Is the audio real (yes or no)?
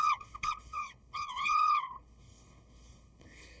no